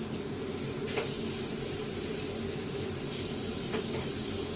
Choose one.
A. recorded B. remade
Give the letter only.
A